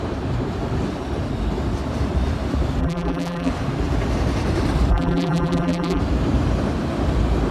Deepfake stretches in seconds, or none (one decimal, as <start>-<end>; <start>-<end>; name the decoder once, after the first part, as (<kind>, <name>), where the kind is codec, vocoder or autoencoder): 2.8-3.5 (vocoder, BigVGAN v2); 4.9-6.0